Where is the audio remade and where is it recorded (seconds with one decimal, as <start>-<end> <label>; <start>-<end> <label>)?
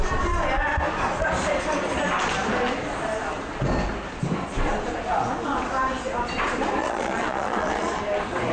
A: 0.0-6.8 recorded; 6.8-8.0 remade; 8.0-8.5 recorded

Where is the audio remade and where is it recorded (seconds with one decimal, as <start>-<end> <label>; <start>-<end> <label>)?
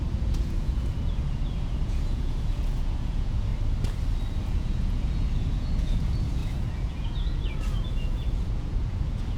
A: 0.0-3.5 remade; 3.5-4.4 recorded; 4.4-9.4 remade